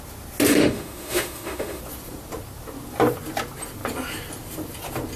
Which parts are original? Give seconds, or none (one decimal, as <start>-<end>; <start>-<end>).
0.0-0.5; 1.8-5.2